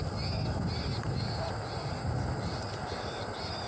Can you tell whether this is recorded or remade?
recorded